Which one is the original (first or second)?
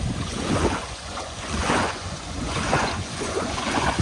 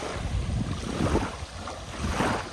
second